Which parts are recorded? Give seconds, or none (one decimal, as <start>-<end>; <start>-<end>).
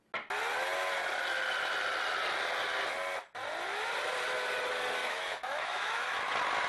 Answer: 0.0-5.0; 6.3-6.7